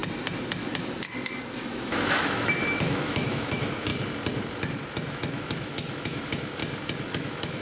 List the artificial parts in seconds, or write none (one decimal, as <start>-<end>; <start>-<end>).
1.6-3.9; 5.1-6.6; 7.1-7.6